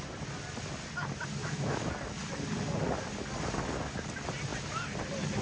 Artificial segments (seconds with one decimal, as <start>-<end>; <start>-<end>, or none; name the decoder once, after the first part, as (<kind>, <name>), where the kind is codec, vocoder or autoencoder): 1.4-1.9 (autoencoder, DAC-VAE)